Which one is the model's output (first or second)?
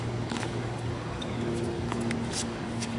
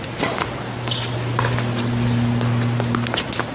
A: first